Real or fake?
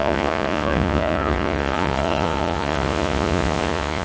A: fake